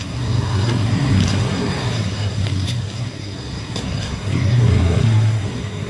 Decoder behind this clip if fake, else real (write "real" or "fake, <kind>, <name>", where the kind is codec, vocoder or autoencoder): fake, codec, SNAC